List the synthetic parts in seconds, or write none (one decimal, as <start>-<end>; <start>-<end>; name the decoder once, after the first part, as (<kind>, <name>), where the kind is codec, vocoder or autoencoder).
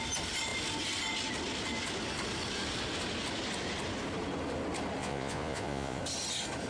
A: 5.0-6.0 (vocoder, Vocos)